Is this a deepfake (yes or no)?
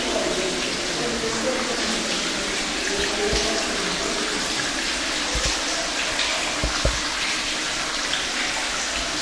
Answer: no